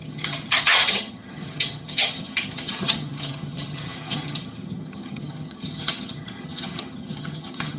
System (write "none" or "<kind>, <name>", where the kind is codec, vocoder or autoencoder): vocoder, HiFi-GAN